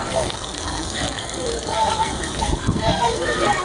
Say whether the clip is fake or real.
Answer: fake